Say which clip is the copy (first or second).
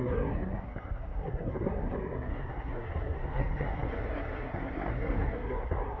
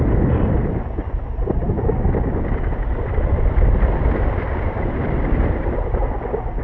first